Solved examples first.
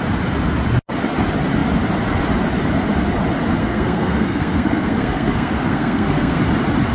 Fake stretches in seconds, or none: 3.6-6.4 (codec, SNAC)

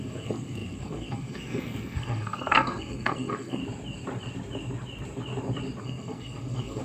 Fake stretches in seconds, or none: 0.0-3.6 (codec, SNAC); 5.8-6.8

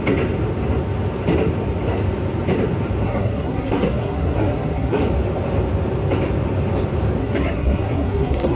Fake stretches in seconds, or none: 3.0-5.0 (codec, SNAC); 7.2-8.6

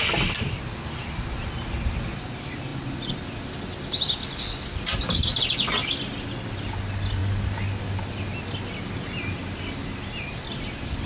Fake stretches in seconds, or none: none

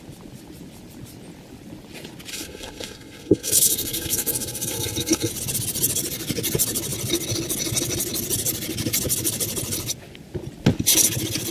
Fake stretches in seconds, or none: 2.3-5.3 (codec, SNAC)

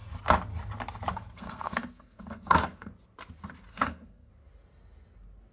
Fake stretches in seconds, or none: 1.1-2.9 (codec, SNAC); 3.7-4.3

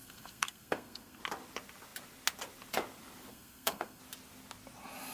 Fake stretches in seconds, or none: 0.0-1.2 (codec, SNAC); 3.3-4.0